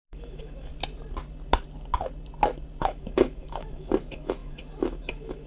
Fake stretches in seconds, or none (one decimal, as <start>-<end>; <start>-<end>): 0.0-0.7; 2.8-5.5

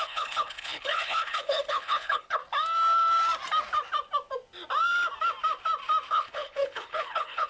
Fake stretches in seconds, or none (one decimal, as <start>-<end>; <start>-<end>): 0.0-2.4; 6.1-7.5

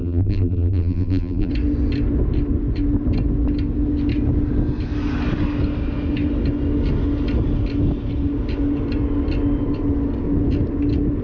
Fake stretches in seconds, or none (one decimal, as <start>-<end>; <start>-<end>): 0.0-1.5